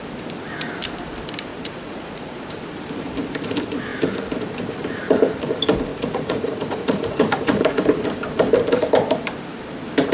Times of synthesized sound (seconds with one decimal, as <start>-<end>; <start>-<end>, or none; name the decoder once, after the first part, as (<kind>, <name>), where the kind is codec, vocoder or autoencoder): 1.5-2.4 (vocoder, Vocos); 5.9-7.8